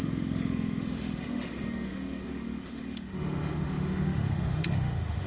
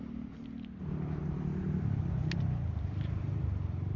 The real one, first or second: second